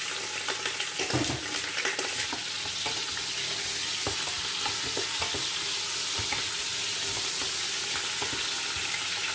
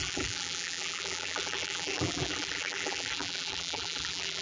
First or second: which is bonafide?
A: first